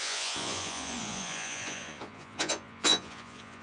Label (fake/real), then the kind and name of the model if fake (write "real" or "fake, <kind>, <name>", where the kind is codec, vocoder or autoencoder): fake, vocoder, Vocos